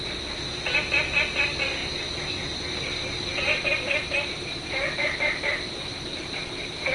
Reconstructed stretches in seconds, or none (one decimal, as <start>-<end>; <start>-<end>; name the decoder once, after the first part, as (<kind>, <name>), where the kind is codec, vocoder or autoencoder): none